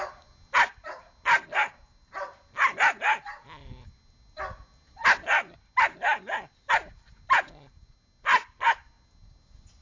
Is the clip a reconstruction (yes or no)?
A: no